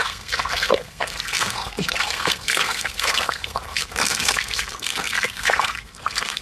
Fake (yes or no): yes